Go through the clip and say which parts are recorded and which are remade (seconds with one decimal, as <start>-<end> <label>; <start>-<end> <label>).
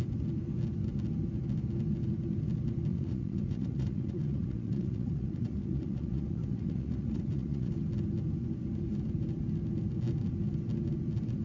0.0-2.9 recorded; 2.9-7.7 remade; 7.7-11.4 recorded